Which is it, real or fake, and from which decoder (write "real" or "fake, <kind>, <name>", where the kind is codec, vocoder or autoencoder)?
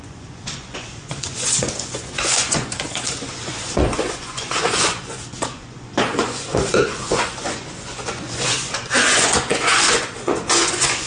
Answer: fake, vocoder, Vocos